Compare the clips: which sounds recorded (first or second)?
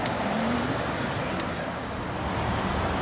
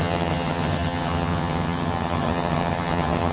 first